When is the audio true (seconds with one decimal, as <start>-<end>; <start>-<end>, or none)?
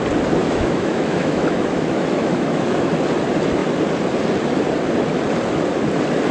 0.0-0.4; 2.9-6.3